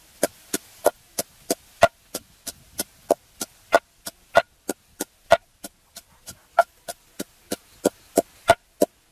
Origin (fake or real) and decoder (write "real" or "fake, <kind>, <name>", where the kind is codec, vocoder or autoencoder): real